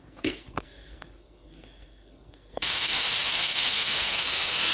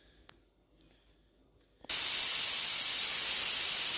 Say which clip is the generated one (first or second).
first